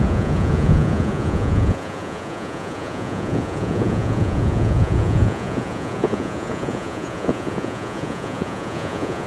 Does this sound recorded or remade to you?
remade